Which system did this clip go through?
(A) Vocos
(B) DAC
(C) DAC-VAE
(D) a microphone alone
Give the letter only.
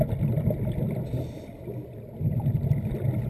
D